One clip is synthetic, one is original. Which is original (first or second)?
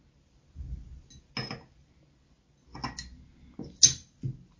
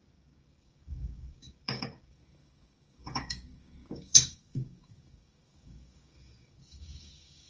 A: first